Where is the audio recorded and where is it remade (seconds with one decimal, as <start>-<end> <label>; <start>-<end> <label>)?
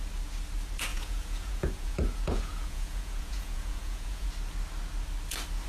0.0-0.9 recorded; 0.9-4.3 remade; 4.3-5.7 recorded